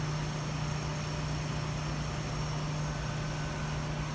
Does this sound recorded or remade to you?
recorded